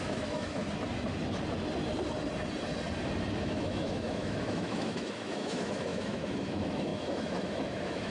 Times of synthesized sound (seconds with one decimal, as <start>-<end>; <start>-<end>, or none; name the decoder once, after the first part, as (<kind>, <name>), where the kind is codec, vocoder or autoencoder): 0.0-0.6 (autoencoder, DAC-VAE); 3.4-8.1

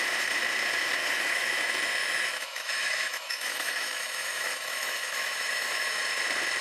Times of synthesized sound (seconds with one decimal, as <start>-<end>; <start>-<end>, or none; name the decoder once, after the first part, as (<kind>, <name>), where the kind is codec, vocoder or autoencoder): 1.0-1.6 (autoencoder, DAC-VAE); 2.0-6.0

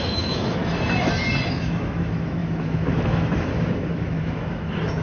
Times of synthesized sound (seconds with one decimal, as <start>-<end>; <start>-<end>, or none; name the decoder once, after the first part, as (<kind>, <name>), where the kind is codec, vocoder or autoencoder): 0.0-0.6 (autoencoder, DAC-VAE); 1.5-5.0

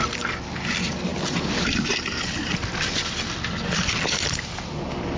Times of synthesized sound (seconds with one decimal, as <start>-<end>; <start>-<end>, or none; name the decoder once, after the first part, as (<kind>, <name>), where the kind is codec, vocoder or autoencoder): none

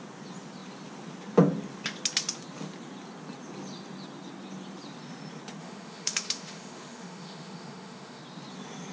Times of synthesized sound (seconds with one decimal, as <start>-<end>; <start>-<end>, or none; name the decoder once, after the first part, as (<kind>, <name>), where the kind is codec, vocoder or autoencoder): 5.6-8.2 (autoencoder, DAC-VAE)